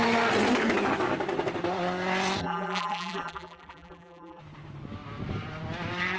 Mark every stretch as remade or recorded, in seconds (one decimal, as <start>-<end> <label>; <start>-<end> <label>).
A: 0.0-2.4 recorded; 2.4-4.4 remade; 4.4-6.2 recorded